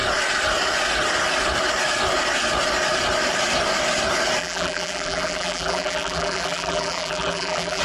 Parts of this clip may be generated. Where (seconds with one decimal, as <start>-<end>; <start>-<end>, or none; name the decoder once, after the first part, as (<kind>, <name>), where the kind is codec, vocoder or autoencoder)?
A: 4.4-7.8 (vocoder, BigVGAN v2)